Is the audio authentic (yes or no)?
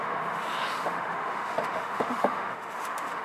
no